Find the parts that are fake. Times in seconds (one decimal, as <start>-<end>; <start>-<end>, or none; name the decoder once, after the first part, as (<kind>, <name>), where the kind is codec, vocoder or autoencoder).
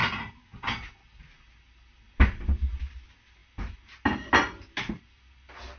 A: none